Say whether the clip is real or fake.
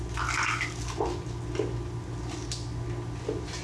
real